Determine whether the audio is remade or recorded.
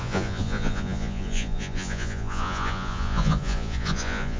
remade